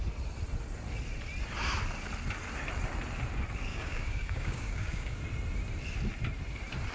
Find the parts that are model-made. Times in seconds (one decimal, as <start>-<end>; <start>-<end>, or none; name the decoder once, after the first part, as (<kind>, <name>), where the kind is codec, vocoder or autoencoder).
3.7-5.2 (codec, DAC)